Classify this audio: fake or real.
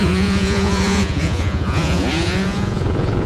fake